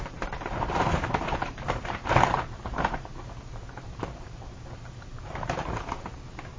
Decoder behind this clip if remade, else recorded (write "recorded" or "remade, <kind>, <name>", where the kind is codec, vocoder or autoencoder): remade, vocoder, BigVGAN v2